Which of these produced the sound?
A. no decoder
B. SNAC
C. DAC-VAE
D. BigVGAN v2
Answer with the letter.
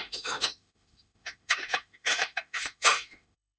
C